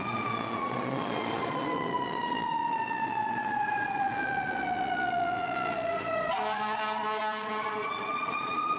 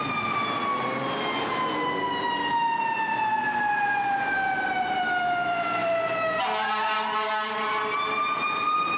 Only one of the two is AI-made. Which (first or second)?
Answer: first